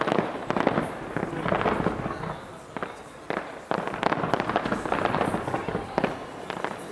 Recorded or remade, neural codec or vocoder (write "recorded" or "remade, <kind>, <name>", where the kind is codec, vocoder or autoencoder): recorded